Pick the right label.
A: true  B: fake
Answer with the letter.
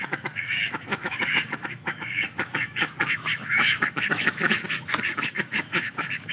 B